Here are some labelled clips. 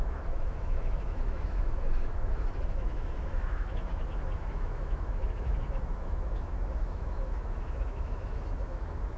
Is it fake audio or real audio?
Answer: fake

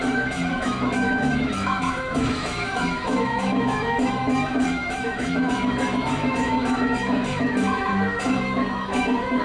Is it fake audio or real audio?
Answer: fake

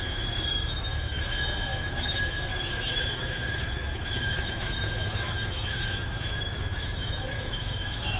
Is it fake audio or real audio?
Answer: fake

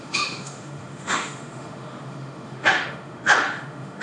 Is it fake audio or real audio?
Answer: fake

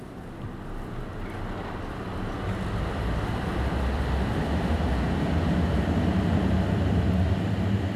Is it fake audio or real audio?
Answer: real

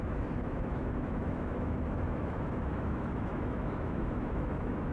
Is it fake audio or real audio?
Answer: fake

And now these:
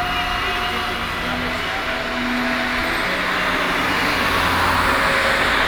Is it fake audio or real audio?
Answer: real